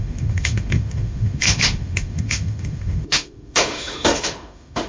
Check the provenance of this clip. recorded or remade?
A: remade